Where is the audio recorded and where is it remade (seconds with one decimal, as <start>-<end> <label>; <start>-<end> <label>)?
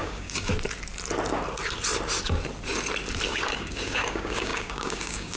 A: 0.0-0.5 remade; 0.5-3.3 recorded; 3.3-5.4 remade